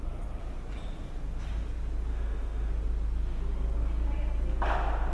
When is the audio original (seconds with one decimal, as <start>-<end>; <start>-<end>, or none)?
0.0-2.1; 2.7-5.1